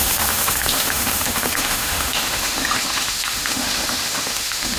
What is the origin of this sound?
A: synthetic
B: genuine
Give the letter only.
A